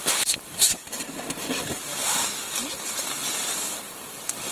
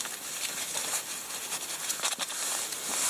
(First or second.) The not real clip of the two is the first